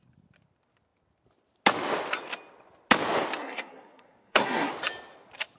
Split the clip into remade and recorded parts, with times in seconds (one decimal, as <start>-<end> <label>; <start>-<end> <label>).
0.0-3.4 recorded; 3.4-4.7 remade; 4.7-5.6 recorded